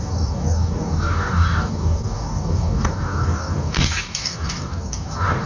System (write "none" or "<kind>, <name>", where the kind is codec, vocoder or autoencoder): codec, DAC